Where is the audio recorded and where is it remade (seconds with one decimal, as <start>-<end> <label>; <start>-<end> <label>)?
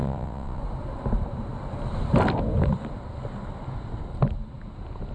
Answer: 0.0-0.6 remade; 0.6-5.1 recorded